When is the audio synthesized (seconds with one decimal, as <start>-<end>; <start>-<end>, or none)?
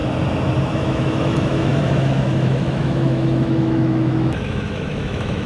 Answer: 0.6-5.5